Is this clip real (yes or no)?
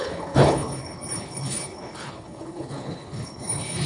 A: no